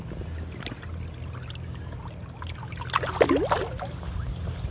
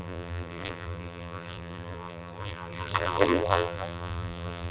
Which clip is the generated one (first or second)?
second